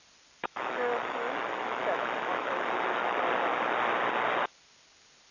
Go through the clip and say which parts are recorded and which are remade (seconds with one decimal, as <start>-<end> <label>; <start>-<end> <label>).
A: 0.0-0.4 recorded; 0.4-3.2 remade; 3.2-5.3 recorded